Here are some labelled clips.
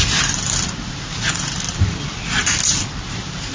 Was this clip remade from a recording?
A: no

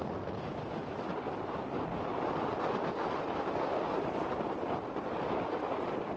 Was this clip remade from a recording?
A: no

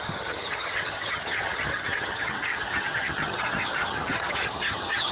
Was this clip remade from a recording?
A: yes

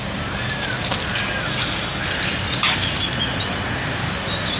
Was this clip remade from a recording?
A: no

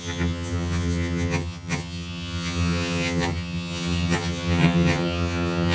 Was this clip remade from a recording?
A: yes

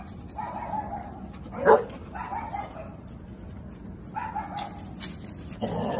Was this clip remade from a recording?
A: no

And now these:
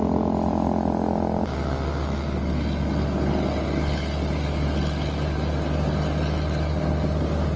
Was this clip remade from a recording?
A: no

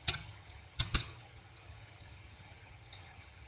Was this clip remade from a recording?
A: yes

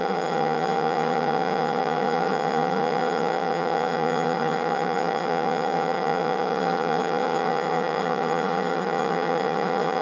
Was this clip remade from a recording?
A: yes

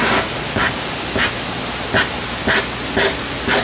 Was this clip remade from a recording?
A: no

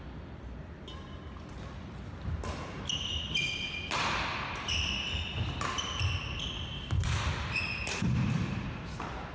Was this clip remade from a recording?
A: no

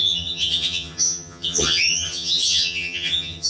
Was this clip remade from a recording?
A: yes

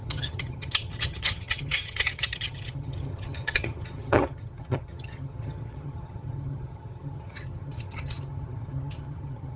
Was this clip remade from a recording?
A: yes